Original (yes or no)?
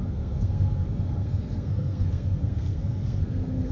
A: no